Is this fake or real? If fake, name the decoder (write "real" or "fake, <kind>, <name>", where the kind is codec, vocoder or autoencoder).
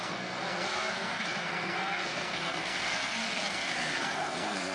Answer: fake, codec, SNAC